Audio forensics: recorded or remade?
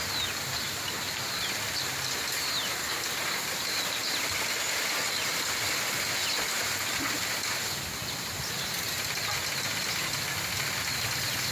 recorded